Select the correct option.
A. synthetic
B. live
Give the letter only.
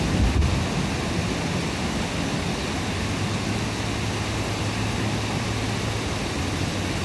B